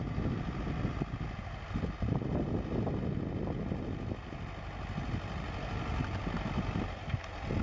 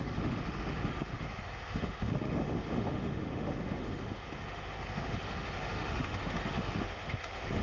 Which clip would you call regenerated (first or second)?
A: second